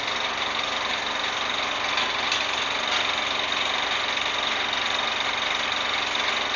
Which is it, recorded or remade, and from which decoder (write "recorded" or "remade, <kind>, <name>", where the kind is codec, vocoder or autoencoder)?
recorded